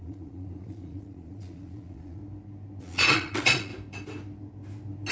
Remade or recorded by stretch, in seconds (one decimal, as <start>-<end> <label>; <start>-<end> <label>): 0.0-2.2 remade; 2.2-2.8 recorded; 2.8-3.7 remade; 3.7-5.1 recorded